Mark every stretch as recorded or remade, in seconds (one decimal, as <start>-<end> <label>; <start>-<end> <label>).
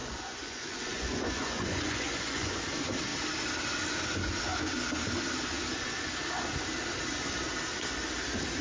0.0-2.6 remade; 2.6-8.6 recorded